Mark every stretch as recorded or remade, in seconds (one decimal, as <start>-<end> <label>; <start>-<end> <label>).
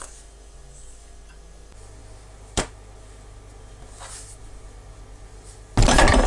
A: 0.0-6.3 recorded